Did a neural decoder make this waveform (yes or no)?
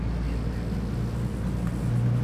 no